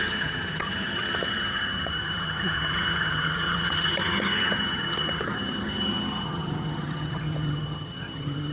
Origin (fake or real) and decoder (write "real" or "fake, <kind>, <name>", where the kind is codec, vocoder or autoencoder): fake, vocoder, HiFi-GAN